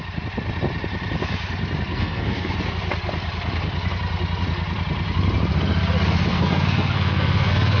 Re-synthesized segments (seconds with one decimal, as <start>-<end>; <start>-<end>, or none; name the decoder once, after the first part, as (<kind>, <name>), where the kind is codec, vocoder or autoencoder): 1.9-2.5 (codec, SNAC); 6.3-7.8